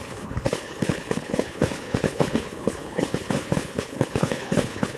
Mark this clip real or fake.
fake